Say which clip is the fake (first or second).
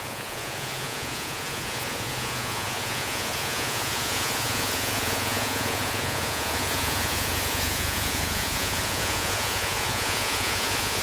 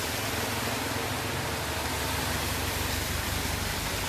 first